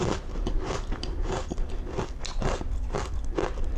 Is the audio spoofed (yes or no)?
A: no